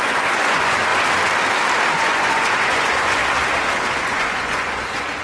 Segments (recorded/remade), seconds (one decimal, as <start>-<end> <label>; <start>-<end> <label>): 0.0-0.9 remade; 0.9-1.9 recorded; 1.9-3.2 remade; 3.2-4.0 recorded; 4.0-5.2 remade